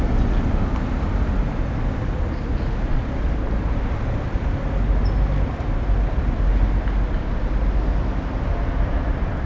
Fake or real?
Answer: real